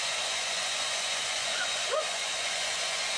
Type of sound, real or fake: fake